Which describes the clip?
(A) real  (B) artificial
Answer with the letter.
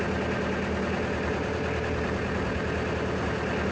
A